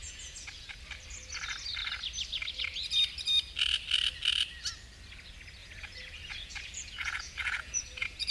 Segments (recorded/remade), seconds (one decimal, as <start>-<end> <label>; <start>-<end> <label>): 0.0-0.8 remade; 0.8-5.6 recorded; 5.6-8.3 remade